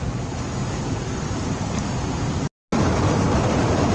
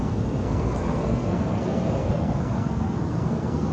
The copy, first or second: second